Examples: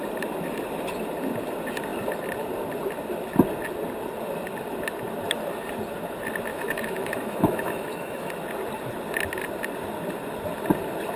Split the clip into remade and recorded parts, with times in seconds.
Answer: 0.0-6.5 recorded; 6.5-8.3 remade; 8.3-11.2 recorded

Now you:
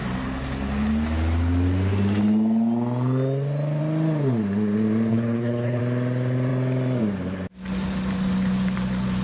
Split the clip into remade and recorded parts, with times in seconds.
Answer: 0.0-5.1 recorded; 5.1-5.8 remade; 5.8-9.2 recorded

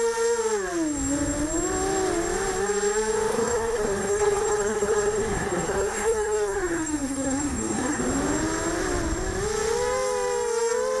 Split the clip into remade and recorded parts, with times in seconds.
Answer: 0.0-3.3 recorded; 3.3-8.0 remade; 8.0-11.0 recorded